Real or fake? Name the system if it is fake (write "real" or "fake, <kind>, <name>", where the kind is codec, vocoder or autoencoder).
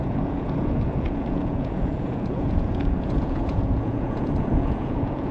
fake, vocoder, Vocos